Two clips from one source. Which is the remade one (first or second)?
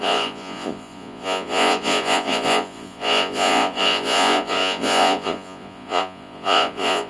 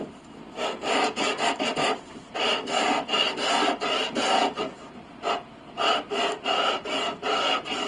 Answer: first